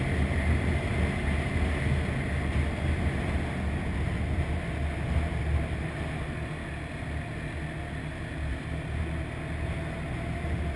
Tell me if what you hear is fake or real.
real